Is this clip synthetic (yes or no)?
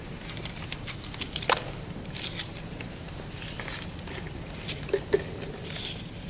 no